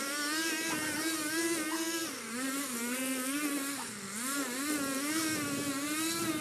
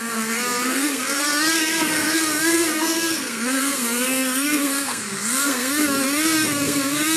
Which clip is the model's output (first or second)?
second